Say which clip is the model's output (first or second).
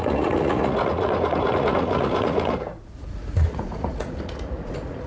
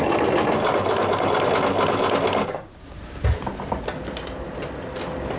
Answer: first